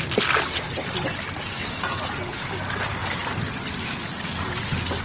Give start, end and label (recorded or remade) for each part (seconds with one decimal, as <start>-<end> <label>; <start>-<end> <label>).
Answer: 0.0-5.0 recorded